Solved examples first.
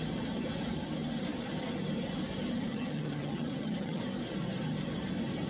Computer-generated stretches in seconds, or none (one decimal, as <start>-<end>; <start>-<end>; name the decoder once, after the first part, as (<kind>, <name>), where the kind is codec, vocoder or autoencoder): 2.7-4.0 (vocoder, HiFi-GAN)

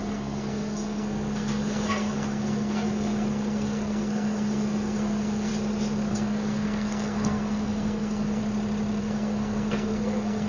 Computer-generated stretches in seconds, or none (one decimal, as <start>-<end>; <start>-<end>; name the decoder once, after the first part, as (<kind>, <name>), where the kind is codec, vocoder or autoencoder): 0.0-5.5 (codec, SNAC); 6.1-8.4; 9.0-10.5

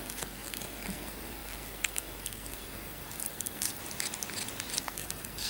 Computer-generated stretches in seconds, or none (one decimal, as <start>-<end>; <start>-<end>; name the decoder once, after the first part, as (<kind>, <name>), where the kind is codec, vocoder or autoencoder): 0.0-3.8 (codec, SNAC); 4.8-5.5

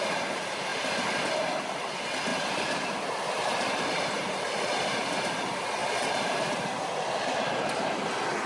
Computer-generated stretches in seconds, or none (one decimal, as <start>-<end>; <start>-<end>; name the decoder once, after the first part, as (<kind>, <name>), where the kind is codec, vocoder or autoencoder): 0.7-1.3 (vocoder, BigVGAN v2); 2.3-4.6

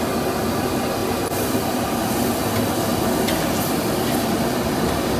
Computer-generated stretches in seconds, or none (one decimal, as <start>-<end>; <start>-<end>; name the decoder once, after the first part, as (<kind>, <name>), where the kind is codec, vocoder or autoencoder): 1.0-1.9 (vocoder, BigVGAN v2)